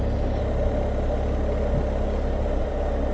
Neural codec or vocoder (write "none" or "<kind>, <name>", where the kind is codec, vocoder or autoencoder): none